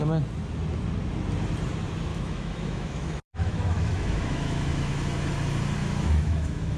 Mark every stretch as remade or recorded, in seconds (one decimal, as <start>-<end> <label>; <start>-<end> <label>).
0.0-2.1 recorded; 2.1-5.0 remade; 5.0-5.8 recorded; 5.8-6.8 remade